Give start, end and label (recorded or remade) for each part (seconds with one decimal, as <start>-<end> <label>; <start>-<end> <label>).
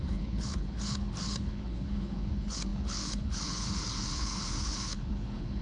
0.0-5.6 remade